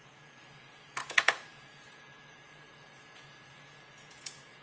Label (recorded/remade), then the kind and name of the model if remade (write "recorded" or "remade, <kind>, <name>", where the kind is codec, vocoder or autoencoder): remade, vocoder, Vocos